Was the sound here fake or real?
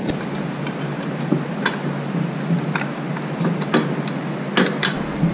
real